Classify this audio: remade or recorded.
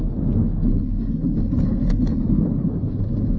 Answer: recorded